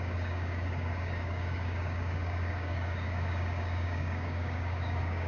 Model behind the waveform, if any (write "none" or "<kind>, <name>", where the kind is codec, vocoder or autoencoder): codec, DAC